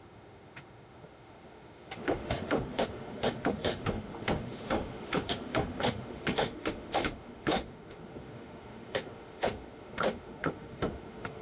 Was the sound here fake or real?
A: fake